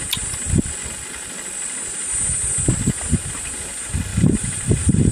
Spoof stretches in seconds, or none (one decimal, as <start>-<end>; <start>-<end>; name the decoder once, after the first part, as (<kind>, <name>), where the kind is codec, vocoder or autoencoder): 4.1-5.1 (vocoder, BigVGAN v2)